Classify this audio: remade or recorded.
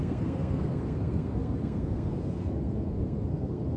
remade